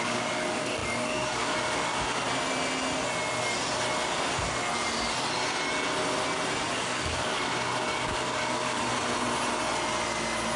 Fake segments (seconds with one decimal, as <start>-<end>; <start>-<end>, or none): 0.0-1.9; 6.7-8.9